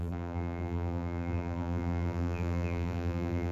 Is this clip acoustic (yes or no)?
no